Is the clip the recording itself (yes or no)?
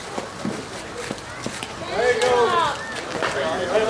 yes